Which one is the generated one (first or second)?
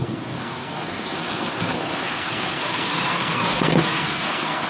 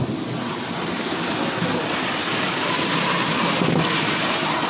first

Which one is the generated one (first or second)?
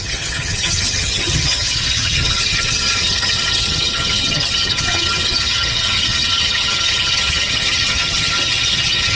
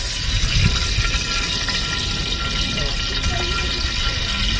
first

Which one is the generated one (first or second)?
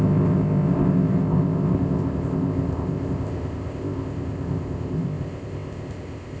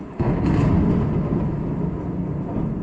first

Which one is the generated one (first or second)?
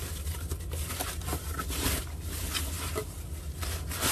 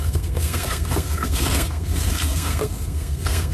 second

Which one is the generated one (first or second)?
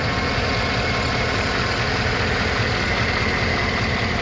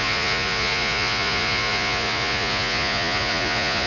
second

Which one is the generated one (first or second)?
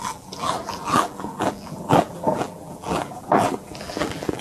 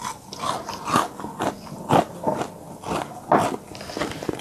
first